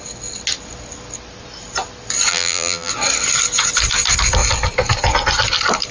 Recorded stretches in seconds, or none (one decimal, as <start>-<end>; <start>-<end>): 0.0-2.3; 2.9-5.9